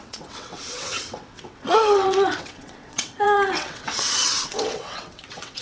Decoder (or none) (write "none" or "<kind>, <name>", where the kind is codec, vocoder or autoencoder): vocoder, WaveNeXt